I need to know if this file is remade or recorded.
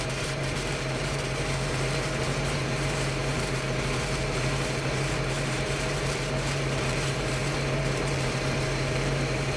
remade